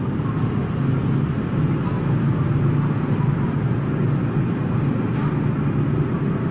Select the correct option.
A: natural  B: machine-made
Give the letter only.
A